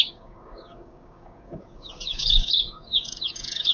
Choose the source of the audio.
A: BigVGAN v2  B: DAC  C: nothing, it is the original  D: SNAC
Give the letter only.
B